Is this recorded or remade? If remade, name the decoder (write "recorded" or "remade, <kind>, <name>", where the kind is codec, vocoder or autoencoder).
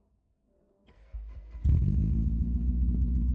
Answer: remade, codec, SNAC